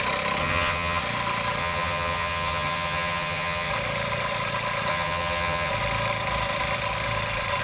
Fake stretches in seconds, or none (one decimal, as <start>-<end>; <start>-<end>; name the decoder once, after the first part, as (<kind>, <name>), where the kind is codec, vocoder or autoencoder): 0.4-1.0 (vocoder, HiFi-GAN); 1.6-3.7; 4.9-5.7